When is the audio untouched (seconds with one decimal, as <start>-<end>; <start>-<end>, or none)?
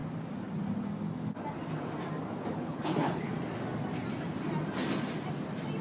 0.0-2.5; 3.3-5.8